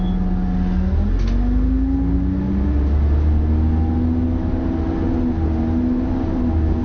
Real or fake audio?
real